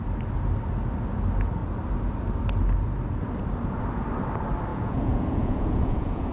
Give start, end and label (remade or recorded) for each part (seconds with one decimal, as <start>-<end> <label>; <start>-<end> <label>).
0.0-4.7 recorded; 4.7-6.3 remade